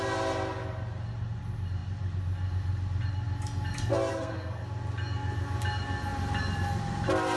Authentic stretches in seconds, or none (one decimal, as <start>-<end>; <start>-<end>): 0.0-4.1; 4.6-7.4